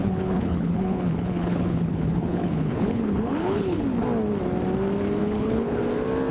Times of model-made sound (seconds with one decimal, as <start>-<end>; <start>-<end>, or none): 0.0-3.8; 5.2-5.8